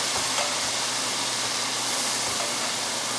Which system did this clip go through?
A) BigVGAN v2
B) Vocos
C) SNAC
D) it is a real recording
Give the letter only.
D